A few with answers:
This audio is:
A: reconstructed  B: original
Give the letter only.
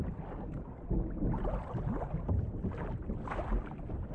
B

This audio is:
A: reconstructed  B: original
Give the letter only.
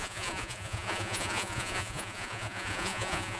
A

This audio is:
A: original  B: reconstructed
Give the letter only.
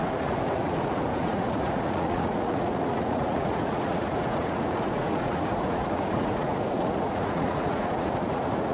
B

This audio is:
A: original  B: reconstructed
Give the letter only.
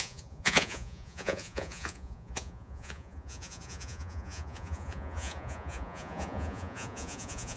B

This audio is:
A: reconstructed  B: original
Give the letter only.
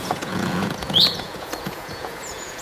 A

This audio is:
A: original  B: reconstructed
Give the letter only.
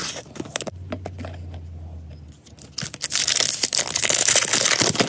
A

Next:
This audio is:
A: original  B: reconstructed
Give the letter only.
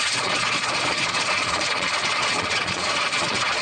B